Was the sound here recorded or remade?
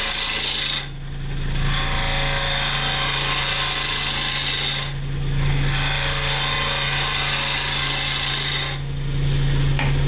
recorded